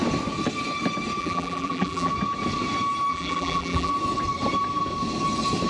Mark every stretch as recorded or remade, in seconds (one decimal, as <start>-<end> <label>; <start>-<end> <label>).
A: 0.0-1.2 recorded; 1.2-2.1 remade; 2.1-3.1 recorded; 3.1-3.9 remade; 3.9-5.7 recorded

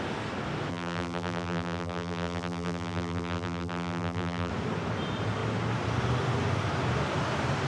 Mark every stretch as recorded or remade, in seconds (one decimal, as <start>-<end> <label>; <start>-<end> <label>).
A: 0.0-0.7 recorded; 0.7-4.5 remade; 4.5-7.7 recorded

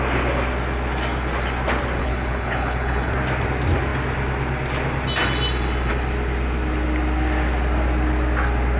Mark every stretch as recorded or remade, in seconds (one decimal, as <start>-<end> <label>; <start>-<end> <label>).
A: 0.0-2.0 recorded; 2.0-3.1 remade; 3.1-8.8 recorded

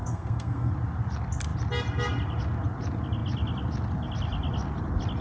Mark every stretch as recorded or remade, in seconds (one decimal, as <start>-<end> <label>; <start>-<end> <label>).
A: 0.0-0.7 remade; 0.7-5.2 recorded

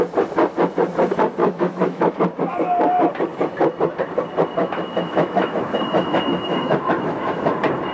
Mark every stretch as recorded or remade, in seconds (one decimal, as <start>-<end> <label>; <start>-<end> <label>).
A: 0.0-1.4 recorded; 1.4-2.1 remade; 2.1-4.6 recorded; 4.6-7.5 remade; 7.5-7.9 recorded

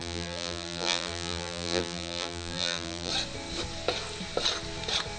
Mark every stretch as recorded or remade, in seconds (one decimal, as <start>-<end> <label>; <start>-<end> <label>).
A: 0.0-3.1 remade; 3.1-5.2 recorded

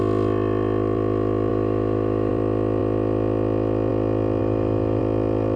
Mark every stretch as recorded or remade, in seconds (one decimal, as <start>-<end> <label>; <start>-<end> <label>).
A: 0.0-1.5 recorded; 1.5-2.3 remade; 2.3-4.4 recorded; 4.4-5.0 remade; 5.0-5.6 recorded